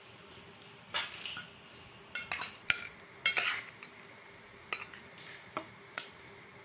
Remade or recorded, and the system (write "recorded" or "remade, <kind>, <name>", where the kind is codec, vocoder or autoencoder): recorded